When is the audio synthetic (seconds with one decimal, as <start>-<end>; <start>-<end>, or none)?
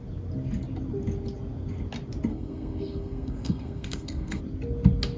2.3-4.4